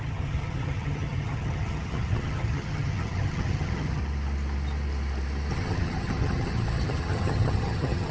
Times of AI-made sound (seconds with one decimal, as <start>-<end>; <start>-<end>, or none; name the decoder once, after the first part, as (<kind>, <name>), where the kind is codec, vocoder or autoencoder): 0.0-4.0 (vocoder, HiFi-GAN); 5.5-8.1